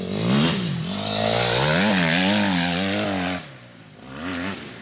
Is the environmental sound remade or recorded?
recorded